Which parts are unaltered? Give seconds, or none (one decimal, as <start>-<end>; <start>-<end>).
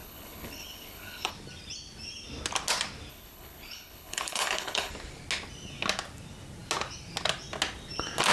1.3-3.1; 4.9-8.3